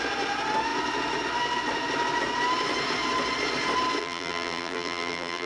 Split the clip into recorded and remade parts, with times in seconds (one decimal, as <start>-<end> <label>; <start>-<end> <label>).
0.0-4.0 recorded; 4.0-5.5 remade